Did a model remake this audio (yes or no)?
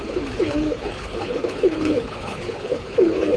yes